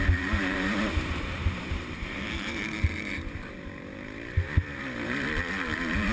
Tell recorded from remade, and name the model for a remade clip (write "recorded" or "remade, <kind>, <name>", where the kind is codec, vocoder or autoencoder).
remade, vocoder, BigVGAN v2